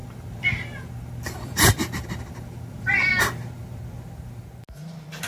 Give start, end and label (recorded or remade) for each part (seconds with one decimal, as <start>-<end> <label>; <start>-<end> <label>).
0.0-3.2 remade; 3.2-5.3 recorded